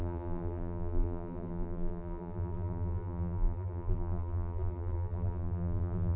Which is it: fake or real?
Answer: fake